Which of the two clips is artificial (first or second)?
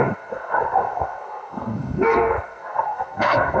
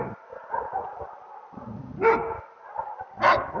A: first